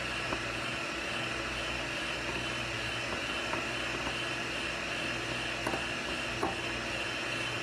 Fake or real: real